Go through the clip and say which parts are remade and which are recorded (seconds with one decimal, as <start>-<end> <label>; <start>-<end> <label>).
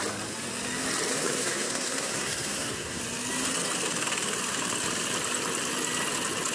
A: 0.0-1.1 recorded; 1.1-3.0 remade; 3.0-6.5 recorded